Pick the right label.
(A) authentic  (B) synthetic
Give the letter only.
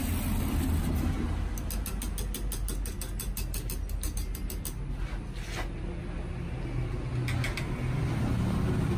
A